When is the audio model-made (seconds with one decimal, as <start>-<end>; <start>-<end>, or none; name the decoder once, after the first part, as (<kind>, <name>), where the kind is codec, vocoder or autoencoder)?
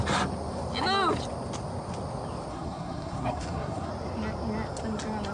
2.5-3.9 (codec, SNAC)